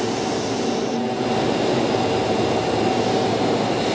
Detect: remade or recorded recorded